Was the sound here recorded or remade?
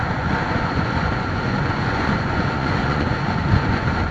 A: remade